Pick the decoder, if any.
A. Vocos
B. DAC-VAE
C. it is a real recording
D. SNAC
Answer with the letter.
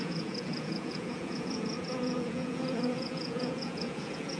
A